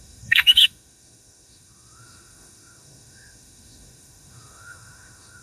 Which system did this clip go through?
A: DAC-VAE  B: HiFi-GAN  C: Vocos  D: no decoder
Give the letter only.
A